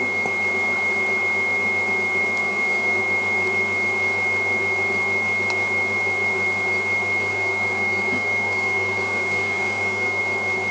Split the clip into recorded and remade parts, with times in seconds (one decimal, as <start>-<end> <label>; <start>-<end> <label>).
0.0-2.4 recorded; 2.4-3.0 remade; 3.0-7.3 recorded; 7.3-10.2 remade; 10.2-10.7 recorded